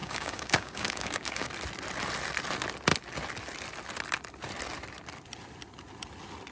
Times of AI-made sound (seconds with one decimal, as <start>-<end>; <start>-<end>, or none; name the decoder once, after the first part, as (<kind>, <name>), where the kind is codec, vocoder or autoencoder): 0.0-1.5 (codec, DAC)